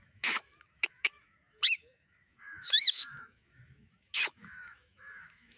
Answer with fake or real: fake